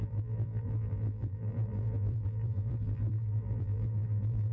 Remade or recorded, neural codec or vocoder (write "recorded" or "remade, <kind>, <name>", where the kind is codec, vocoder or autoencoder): remade, vocoder, BigVGAN v2